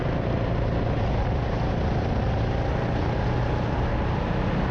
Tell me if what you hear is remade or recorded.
recorded